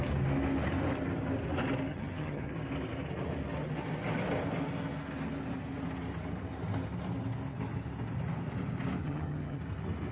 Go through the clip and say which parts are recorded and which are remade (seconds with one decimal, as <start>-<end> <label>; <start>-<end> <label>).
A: 0.0-1.9 recorded; 1.9-2.5 remade; 2.5-9.0 recorded; 9.0-9.6 remade; 9.6-10.1 recorded